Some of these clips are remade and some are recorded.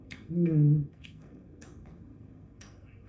remade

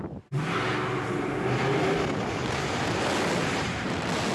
recorded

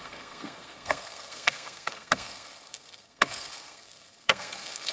remade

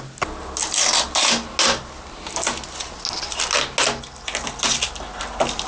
recorded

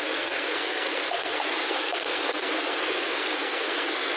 remade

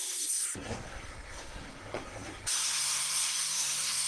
remade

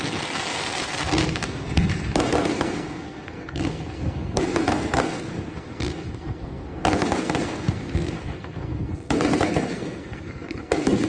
remade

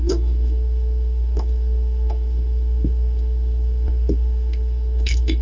remade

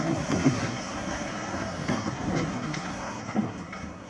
remade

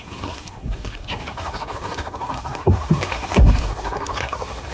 remade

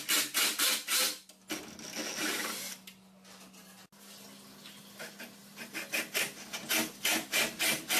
recorded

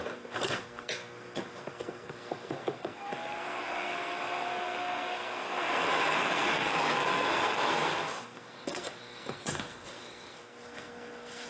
remade